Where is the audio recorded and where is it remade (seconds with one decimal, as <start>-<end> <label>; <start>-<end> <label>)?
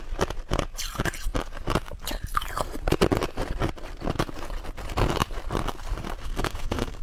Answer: 0.0-6.2 recorded; 6.2-7.0 remade